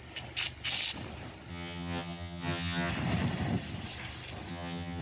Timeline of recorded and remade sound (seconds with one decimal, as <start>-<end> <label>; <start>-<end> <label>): 0.0-1.5 recorded; 1.5-2.9 remade; 2.9-4.5 recorded; 4.5-5.0 remade